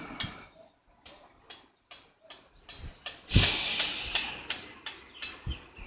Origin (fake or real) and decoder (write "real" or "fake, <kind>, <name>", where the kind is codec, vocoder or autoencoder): real